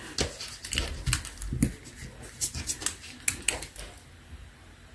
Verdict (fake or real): real